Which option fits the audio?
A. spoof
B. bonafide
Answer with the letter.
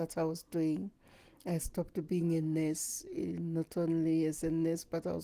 B